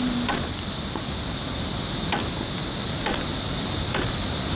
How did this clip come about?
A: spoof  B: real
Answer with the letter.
B